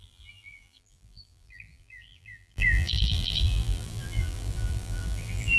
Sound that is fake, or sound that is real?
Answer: fake